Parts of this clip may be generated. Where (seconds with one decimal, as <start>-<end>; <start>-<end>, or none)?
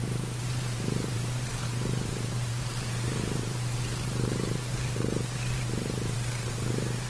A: 0.0-7.1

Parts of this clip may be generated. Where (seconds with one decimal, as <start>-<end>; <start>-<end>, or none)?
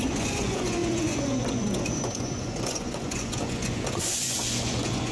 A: 0.0-5.1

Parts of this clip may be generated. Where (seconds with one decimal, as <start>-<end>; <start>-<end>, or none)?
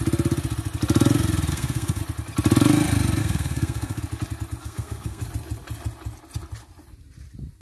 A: 1.5-2.0; 3.2-4.0; 4.6-5.2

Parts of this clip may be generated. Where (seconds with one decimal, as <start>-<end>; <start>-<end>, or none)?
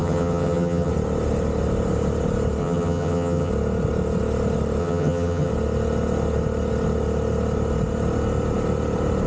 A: 0.0-0.9; 2.6-3.5; 4.8-5.5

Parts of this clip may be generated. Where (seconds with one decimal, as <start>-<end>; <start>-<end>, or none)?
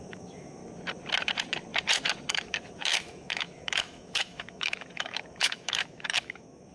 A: 0.0-0.6; 2.3-6.7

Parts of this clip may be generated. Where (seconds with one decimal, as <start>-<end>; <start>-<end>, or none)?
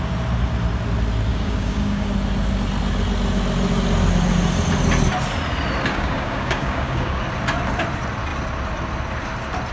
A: 1.3-2.1; 5.9-7.2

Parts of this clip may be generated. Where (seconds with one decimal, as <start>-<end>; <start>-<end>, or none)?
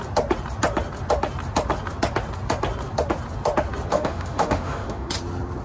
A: 3.9-5.1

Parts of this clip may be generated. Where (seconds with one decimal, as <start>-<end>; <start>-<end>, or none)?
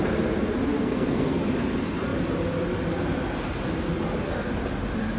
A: 0.8-1.4